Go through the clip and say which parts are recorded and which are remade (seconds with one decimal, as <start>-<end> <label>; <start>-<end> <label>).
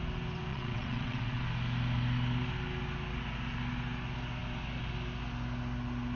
0.0-0.5 recorded; 0.5-1.4 remade; 1.4-6.2 recorded